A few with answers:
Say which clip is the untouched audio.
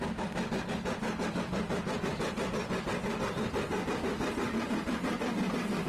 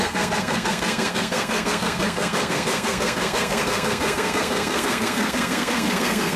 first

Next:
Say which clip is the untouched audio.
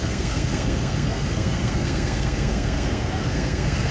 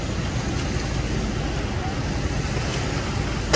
second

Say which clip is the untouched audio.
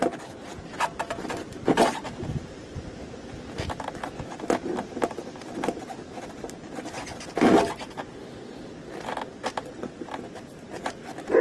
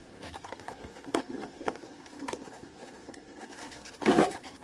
first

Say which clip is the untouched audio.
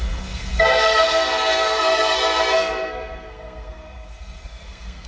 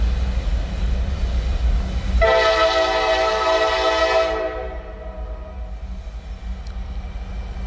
second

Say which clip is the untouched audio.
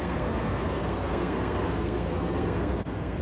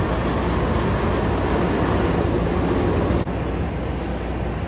second